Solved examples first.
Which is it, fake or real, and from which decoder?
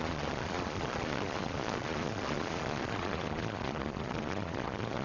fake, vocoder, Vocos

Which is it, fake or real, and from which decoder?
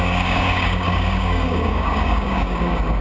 fake, codec, DAC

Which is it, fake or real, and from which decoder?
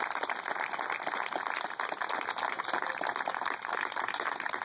real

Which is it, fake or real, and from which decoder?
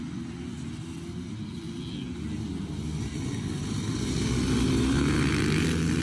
real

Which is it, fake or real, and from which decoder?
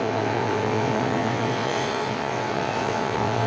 fake, vocoder, WaveNeXt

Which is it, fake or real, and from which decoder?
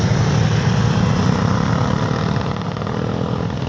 real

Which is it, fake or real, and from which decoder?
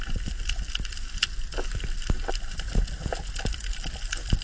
real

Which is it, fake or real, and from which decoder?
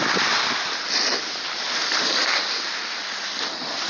real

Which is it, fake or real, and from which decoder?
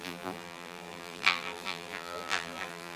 fake, vocoder, BigVGAN v2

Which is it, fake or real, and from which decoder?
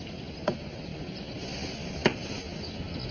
real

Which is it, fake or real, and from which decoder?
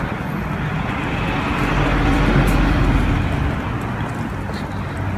real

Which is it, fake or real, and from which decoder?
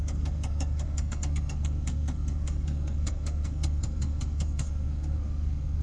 fake, codec, SNAC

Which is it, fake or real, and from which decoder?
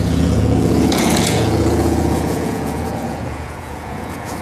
fake, vocoder, Vocos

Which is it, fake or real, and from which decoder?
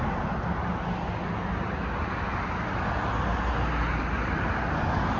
real